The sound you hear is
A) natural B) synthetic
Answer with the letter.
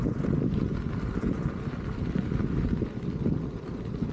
A